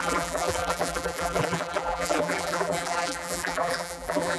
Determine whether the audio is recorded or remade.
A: remade